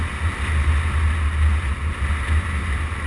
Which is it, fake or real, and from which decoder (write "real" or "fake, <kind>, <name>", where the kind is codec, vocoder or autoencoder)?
real